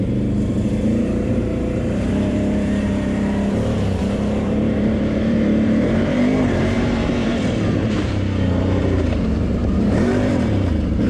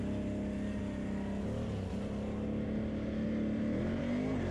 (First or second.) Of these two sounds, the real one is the second